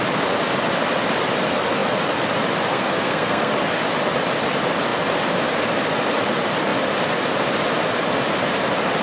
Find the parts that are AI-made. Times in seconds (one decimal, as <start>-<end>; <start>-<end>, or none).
2.7-3.5